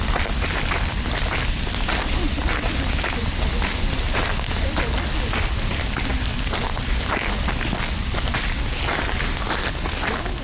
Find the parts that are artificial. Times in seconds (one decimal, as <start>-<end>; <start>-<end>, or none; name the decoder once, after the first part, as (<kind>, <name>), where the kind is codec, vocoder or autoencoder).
none